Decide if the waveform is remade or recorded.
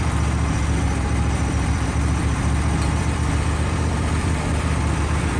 remade